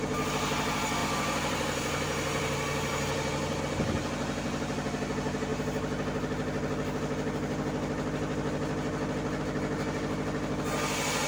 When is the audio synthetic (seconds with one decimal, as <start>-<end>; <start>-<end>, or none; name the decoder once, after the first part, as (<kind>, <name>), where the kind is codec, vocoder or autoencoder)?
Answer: 1.0-3.6 (vocoder, BigVGAN v2)